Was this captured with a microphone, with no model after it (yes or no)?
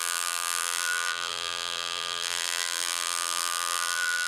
no